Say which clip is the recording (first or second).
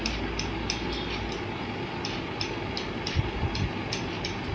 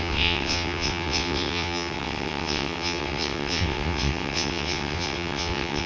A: first